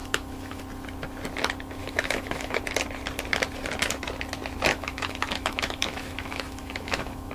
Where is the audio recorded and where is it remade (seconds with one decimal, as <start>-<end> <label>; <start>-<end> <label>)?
0.0-0.6 remade; 0.6-1.8 recorded; 1.8-2.6 remade; 2.6-4.7 recorded; 4.7-7.3 remade